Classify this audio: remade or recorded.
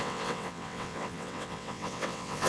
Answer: remade